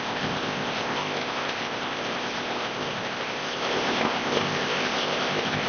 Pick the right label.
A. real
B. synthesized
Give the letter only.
B